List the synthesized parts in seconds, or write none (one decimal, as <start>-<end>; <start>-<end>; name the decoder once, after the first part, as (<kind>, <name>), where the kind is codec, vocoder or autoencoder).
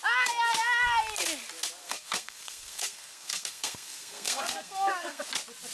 1.8-5.2 (codec, SNAC)